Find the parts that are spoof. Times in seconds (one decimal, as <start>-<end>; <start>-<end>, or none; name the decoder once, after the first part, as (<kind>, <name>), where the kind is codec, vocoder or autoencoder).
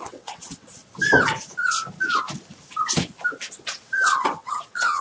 0.0-0.8 (vocoder, WaveNeXt); 3.5-5.0